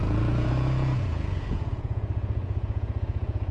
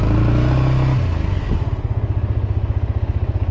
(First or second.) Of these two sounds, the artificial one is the first